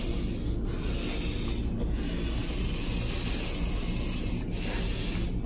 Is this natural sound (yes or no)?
yes